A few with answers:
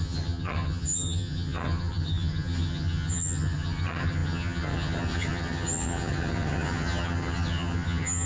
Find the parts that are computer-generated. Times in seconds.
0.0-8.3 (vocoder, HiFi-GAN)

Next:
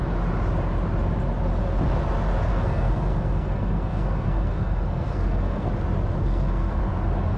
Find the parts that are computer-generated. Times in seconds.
2.5-5.7 (codec, SNAC); 6.2-6.8

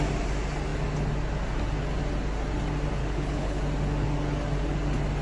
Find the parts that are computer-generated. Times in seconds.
3.0-3.6 (codec, HILCodec)

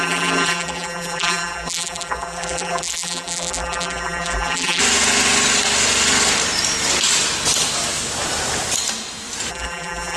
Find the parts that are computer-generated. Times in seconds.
0.0-4.8 (vocoder, BigVGAN v2); 9.5-10.2